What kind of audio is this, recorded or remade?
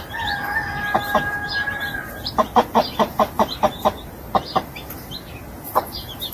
recorded